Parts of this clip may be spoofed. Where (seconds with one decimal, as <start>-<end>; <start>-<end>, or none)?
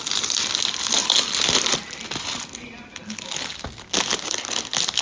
none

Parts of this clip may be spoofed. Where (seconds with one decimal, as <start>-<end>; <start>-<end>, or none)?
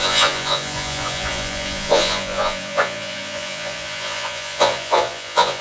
0.0-5.6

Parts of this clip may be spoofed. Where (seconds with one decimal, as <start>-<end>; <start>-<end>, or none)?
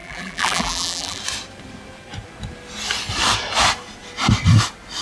0.0-1.2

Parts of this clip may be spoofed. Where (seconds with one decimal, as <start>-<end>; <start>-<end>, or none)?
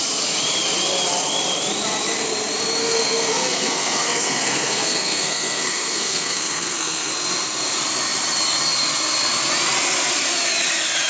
2.8-7.1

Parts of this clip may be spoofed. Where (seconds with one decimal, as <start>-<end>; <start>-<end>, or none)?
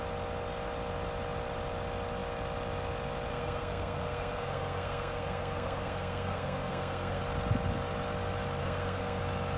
3.3-7.2; 8.6-9.2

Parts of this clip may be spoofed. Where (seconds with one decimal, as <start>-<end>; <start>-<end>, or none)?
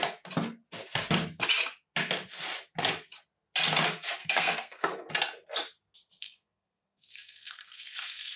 4.2-5.1; 6.2-8.4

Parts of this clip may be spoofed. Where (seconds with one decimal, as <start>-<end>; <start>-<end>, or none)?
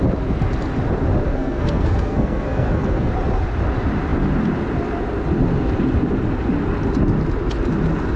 1.3-3.1